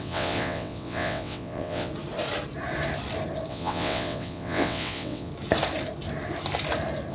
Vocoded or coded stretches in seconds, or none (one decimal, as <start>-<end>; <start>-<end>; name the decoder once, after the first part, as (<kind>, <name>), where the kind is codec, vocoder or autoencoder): 0.0-1.9 (vocoder, WaveNeXt); 3.5-5.3